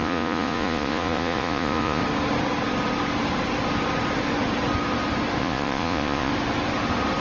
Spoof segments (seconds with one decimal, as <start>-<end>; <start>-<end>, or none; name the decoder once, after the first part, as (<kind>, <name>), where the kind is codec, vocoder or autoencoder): 0.0-2.0 (vocoder, Vocos); 5.4-6.3